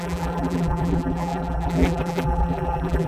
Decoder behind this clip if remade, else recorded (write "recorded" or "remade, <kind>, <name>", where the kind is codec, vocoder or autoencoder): remade, vocoder, BigVGAN v2